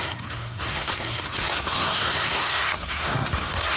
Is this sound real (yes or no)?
no